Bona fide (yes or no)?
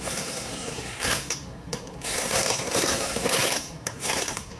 no